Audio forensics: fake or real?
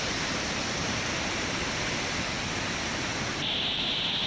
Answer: fake